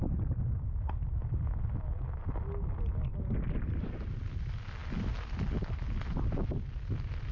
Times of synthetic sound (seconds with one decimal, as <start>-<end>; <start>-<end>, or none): none